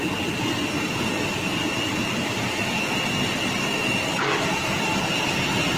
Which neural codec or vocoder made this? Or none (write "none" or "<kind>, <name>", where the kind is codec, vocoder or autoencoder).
none